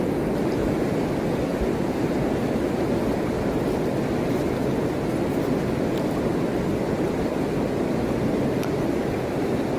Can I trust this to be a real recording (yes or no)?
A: yes